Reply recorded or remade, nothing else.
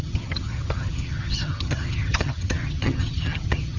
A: remade